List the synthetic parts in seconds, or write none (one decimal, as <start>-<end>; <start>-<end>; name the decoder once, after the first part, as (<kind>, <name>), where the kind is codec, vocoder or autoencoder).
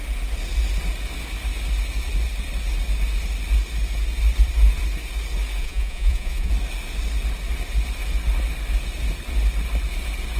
5.6-6.5 (vocoder, Vocos)